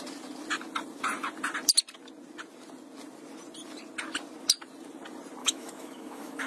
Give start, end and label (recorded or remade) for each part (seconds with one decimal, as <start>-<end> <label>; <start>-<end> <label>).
0.0-5.4 recorded; 5.4-6.5 remade